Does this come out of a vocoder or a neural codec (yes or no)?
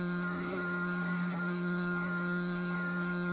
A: yes